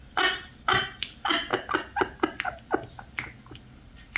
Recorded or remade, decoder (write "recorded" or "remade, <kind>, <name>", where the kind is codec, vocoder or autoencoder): recorded